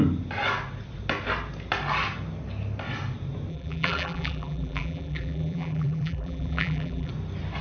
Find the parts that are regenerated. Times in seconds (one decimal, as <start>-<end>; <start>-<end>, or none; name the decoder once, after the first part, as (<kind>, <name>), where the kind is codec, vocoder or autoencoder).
3.5-7.1 (vocoder, BigVGAN v2)